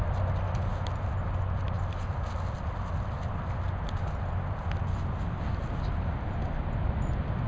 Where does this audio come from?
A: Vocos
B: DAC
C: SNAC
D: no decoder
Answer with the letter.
D